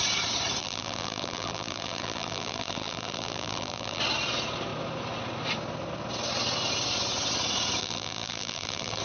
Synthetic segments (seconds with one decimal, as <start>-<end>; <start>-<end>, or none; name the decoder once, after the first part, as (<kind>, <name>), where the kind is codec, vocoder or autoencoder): 0.6-4.0 (vocoder, BigVGAN v2); 7.8-9.0